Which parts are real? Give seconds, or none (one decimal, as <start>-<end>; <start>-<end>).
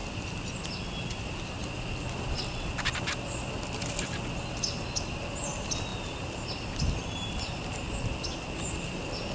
0.0-9.3